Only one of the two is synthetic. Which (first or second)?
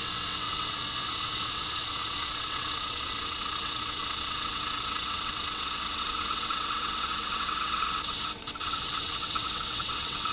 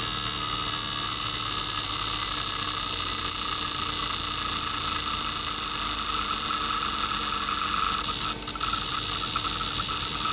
first